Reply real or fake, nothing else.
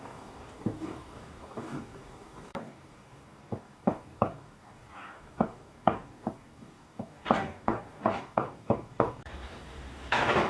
fake